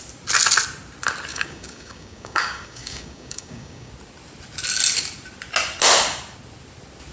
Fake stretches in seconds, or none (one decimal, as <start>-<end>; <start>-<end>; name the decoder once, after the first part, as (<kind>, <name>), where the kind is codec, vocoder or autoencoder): 1.3-3.9 (codec, DAC)

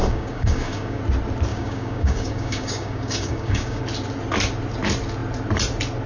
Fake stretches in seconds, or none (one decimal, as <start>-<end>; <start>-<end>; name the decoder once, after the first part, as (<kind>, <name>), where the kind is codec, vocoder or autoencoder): 0.0-1.0 (codec, DAC); 1.5-3.8

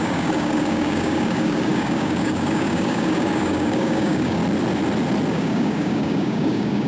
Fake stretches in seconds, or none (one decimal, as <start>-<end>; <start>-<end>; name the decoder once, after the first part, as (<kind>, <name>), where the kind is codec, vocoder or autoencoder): 0.0-4.4 (codec, DAC); 5.3-6.9

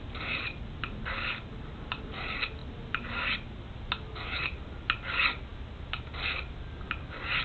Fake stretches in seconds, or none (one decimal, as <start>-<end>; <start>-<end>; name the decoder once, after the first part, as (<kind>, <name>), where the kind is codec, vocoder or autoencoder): none

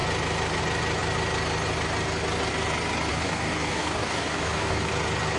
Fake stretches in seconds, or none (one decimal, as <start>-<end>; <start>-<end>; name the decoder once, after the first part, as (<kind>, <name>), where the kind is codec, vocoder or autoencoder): 3.1-4.9 (codec, DAC)